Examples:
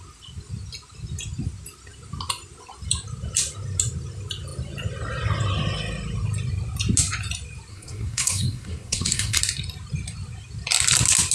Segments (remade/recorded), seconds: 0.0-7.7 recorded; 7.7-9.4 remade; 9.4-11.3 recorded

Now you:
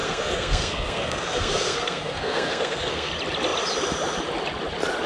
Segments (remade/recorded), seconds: 0.0-3.1 remade; 3.1-5.1 recorded

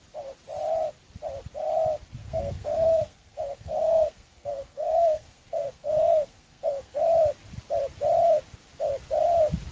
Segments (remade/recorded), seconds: 0.0-2.2 recorded; 2.2-7.0 remade; 7.0-9.7 recorded

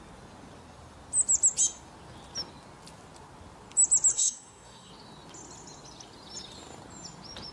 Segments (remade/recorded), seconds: 0.0-4.1 recorded; 4.1-4.9 remade; 4.9-7.5 recorded

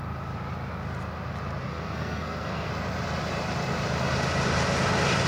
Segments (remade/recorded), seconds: 0.0-1.7 recorded; 1.7-2.7 remade; 2.7-5.3 recorded